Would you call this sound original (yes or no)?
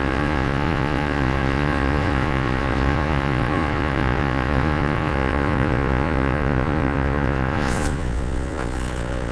no